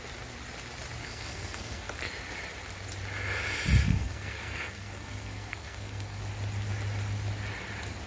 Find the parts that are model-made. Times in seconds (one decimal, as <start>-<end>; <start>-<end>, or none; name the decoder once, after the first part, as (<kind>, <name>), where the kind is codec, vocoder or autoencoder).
1.0-1.9 (codec, SNAC); 3.8-6.2